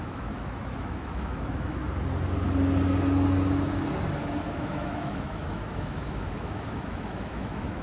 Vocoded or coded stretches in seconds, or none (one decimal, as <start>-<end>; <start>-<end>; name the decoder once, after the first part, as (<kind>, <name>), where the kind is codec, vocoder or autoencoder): 0.0-1.8 (autoencoder, DAC-VAE); 4.5-7.8